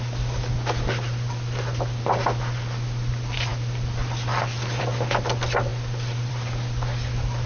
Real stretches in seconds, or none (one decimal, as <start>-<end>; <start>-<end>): 0.0-7.5